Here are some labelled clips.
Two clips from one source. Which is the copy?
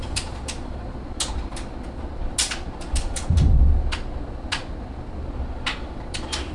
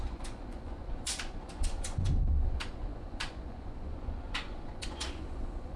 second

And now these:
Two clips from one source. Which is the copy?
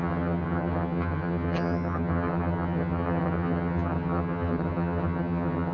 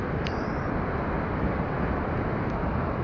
first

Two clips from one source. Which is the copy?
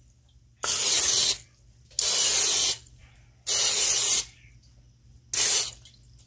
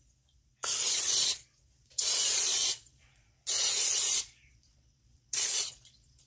second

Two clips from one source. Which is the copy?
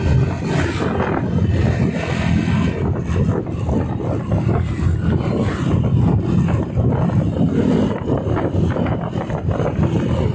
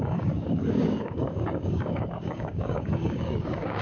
second